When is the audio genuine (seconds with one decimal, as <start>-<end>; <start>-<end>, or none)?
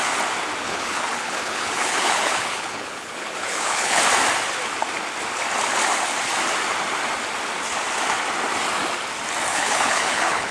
0.0-0.6; 4.0-9.5